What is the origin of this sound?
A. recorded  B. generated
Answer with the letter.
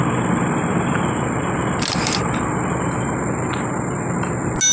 A